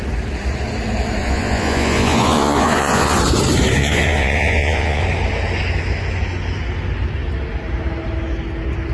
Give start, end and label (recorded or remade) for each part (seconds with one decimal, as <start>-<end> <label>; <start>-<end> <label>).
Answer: 0.0-1.2 recorded; 1.2-3.2 remade; 3.2-3.8 recorded; 3.8-5.0 remade; 5.0-8.9 recorded